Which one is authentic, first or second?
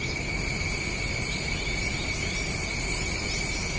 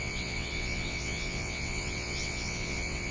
first